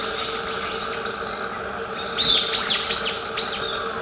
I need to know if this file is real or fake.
real